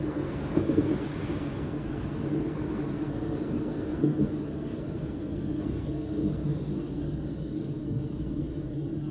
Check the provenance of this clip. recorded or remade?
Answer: remade